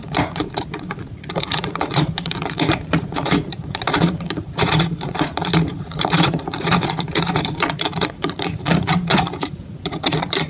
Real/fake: fake